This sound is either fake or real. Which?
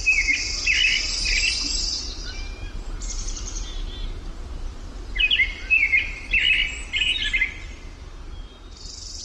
real